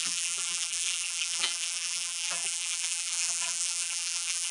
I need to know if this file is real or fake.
fake